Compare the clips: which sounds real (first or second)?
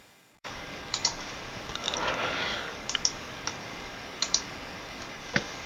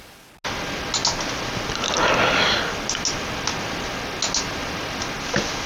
second